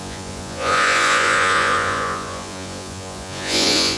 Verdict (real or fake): fake